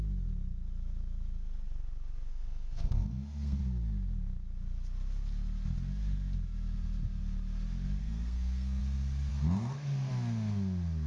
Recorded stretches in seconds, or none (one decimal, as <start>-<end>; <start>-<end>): 0.0-2.3; 3.6-8.0; 8.8-9.3; 10.1-11.1